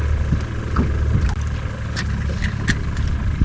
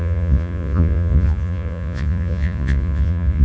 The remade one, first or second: second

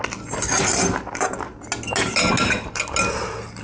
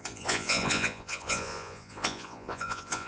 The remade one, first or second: second